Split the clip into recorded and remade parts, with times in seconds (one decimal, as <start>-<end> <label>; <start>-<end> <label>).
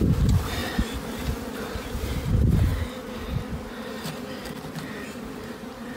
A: 0.0-0.6 remade; 0.6-1.5 recorded; 1.5-2.7 remade; 2.7-4.6 recorded; 4.6-6.0 remade